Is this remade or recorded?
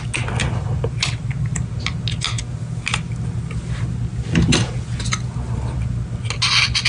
recorded